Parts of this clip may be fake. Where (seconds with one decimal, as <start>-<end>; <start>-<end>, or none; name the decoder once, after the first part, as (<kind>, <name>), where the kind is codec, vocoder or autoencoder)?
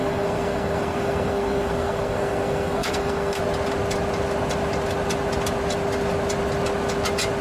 0.0-3.4 (codec, SNAC)